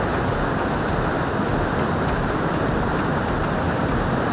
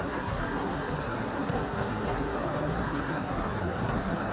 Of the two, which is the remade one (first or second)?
second